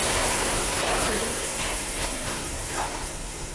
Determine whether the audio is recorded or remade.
remade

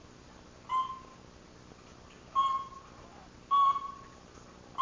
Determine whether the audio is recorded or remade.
recorded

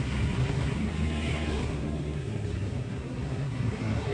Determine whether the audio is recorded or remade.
remade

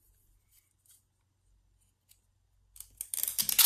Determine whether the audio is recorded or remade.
recorded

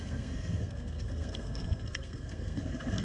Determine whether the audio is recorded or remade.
remade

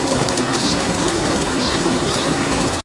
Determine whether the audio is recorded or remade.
remade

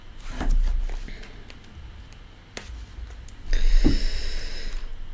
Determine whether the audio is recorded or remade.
recorded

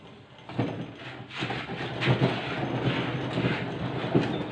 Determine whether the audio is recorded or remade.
recorded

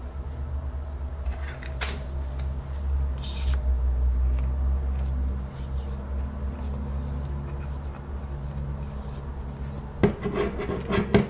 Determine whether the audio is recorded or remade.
recorded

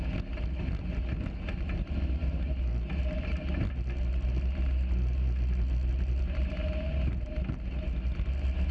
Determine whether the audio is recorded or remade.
recorded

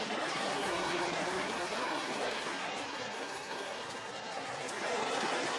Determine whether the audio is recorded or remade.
remade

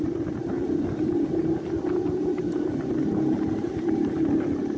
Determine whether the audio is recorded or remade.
recorded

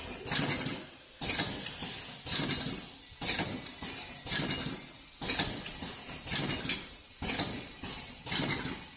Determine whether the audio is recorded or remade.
recorded